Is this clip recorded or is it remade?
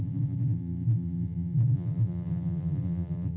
remade